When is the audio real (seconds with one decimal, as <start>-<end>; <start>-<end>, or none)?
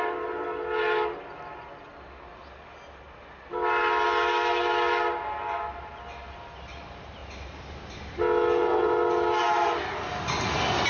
0.0-10.9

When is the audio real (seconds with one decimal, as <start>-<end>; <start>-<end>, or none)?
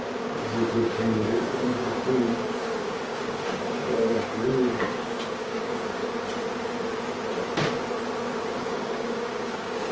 6.0-8.6